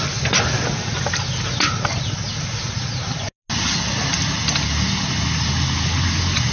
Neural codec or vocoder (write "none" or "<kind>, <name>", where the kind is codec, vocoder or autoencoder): none